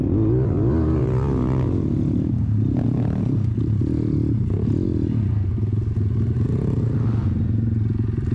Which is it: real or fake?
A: real